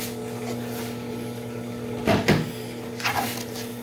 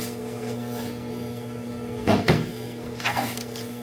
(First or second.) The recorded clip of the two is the first